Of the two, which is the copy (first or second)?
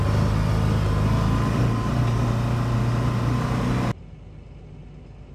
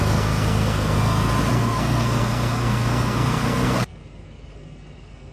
second